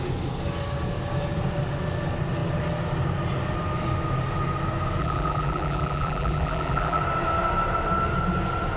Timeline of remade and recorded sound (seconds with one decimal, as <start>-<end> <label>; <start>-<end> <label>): 0.0-5.0 recorded; 5.0-7.0 remade; 7.0-8.8 recorded